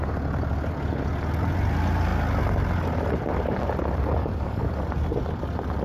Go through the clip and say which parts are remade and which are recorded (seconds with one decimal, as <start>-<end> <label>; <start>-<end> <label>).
0.0-4.2 recorded; 4.2-4.7 remade; 4.7-5.8 recorded